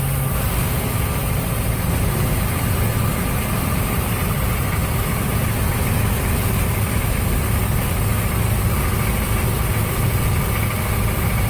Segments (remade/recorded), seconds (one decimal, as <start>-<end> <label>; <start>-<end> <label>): 0.0-11.5 recorded

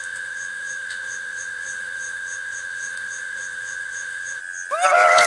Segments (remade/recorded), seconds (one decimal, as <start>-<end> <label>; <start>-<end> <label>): 0.0-4.4 remade; 4.4-5.3 recorded

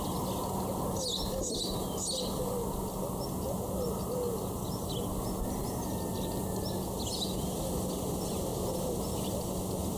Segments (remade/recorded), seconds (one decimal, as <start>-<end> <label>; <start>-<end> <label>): 0.0-10.0 recorded

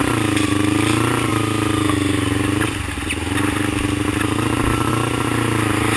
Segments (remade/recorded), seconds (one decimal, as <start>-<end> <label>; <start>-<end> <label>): 0.0-6.0 recorded

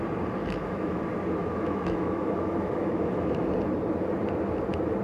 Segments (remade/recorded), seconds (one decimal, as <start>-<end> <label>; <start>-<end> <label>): 0.0-0.4 recorded; 0.4-1.0 remade; 1.0-1.4 recorded; 1.4-3.5 remade; 3.5-5.0 recorded

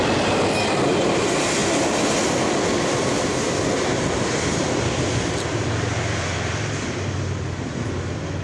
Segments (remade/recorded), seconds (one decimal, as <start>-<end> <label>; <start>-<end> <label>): 0.0-8.4 recorded

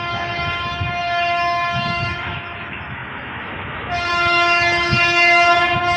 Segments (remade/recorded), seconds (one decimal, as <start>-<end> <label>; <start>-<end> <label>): 0.0-6.0 remade

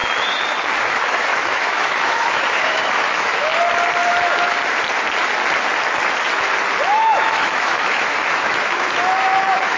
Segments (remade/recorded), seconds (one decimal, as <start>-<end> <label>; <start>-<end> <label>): 0.0-0.8 recorded; 0.8-3.5 remade; 3.5-6.9 recorded; 6.9-9.8 remade